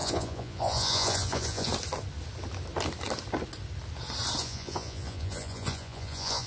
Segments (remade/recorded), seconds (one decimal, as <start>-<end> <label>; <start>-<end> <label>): 0.0-1.7 remade; 1.7-4.4 recorded; 4.4-6.5 remade